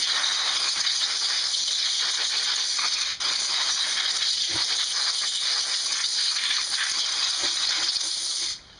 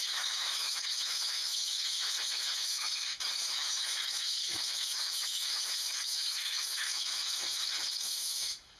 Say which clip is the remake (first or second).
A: second